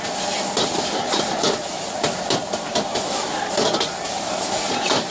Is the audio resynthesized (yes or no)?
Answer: no